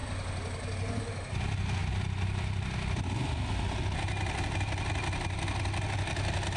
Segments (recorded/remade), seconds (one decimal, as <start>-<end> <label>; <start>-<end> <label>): 0.0-6.6 recorded